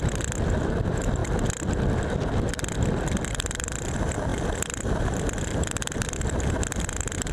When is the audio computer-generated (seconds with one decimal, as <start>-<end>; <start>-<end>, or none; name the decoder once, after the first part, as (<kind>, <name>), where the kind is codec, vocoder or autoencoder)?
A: none